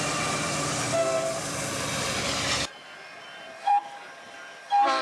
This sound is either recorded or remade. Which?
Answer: remade